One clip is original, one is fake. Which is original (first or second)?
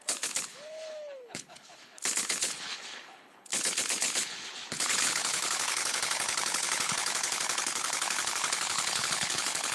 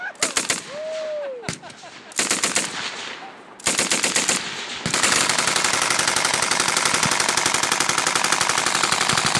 second